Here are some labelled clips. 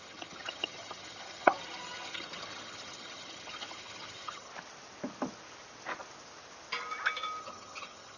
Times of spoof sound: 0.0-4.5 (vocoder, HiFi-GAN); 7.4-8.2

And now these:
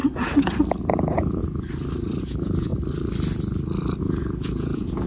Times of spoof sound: 0.8-1.4 (vocoder, Vocos); 2.2-2.7; 4.0-5.1

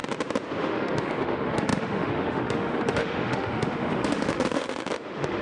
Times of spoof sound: 0.6-5.4 (autoencoder, DAC-VAE)

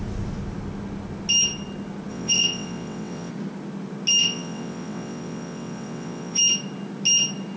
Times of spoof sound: 2.1-3.3 (vocoder, WaveNeXt); 4.2-6.4

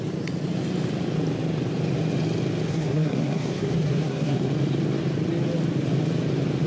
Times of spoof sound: 2.7-4.5 (codec, SNAC)

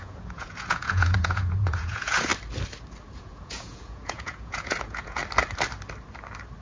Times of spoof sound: 0.0-2.3 (vocoder, Vocos); 3.0-5.2